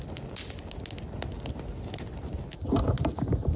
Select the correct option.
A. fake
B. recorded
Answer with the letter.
B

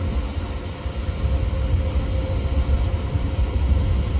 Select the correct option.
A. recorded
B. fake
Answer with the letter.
A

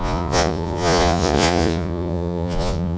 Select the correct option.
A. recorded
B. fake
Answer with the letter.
B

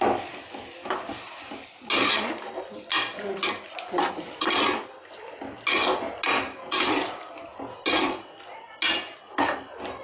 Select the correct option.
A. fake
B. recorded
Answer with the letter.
B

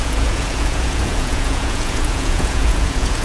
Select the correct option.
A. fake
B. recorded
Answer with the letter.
A